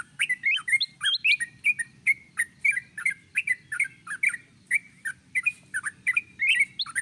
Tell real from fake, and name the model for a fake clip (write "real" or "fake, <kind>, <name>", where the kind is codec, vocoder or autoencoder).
real